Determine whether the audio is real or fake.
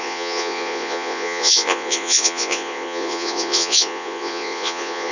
fake